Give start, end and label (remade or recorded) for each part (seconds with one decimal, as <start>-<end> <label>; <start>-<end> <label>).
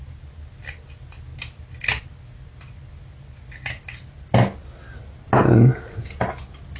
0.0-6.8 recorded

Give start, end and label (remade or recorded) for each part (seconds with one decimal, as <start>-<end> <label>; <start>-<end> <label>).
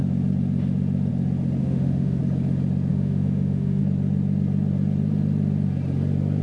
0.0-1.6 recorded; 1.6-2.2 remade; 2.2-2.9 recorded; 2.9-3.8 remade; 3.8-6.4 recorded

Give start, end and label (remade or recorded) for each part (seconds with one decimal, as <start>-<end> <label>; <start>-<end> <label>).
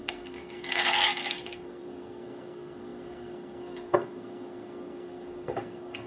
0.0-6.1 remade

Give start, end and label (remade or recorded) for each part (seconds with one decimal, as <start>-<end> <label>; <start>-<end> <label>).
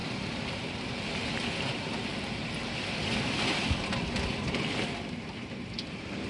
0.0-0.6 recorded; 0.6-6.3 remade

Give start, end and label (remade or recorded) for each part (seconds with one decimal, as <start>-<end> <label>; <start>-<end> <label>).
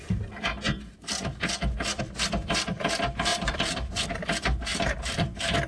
0.0-3.3 recorded; 3.3-3.9 remade; 3.9-4.7 recorded; 4.7-5.7 remade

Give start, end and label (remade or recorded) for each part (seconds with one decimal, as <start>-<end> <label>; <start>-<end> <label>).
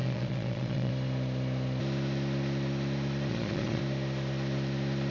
0.0-0.9 remade; 0.9-3.3 recorded; 3.3-3.8 remade; 3.8-5.1 recorded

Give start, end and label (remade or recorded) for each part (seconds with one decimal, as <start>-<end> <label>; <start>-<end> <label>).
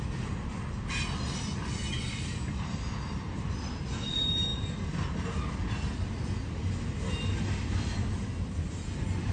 0.0-9.3 recorded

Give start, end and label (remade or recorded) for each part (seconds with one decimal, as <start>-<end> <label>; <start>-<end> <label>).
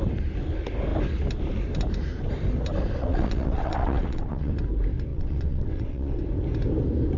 0.0-3.0 recorded; 3.0-4.5 remade; 4.5-5.1 recorded; 5.1-6.2 remade; 6.2-7.2 recorded